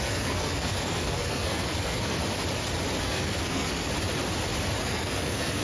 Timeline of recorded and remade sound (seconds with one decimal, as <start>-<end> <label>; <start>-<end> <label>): 0.0-2.2 remade; 2.2-3.0 recorded; 3.0-3.9 remade; 3.9-4.8 recorded; 4.8-5.6 remade